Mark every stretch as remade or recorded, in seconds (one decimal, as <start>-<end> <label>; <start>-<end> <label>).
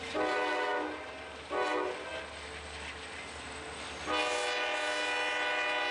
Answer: 0.0-5.9 recorded